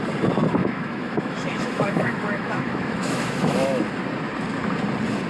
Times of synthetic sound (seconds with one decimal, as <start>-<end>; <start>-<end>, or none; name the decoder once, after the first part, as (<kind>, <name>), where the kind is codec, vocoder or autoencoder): 0.6-3.8 (autoencoder, DAC-VAE)

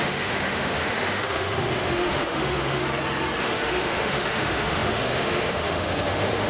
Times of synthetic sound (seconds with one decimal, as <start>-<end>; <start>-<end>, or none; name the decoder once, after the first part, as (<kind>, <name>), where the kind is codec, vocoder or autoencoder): 0.0-2.8 (autoencoder, DAC-VAE); 3.4-6.5

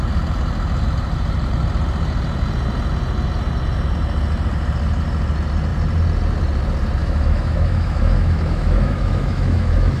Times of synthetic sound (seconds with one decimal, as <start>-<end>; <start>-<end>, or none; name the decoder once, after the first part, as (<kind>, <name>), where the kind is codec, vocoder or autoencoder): 7.0-10.0 (autoencoder, DAC-VAE)

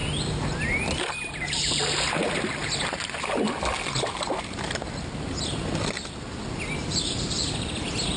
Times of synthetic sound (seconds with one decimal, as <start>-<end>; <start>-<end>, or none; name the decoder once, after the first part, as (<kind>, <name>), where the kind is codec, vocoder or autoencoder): none

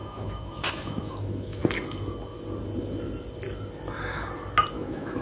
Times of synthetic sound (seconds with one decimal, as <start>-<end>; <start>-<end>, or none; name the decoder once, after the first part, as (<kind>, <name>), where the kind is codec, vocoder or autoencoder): 0.0-1.6 (autoencoder, DAC-VAE); 4.7-5.2